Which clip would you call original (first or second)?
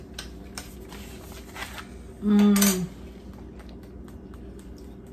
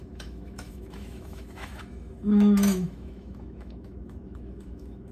first